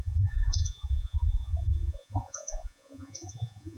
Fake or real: fake